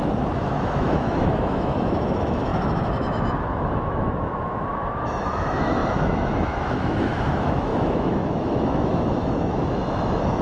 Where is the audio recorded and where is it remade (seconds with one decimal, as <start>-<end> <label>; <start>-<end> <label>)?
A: 0.0-10.4 remade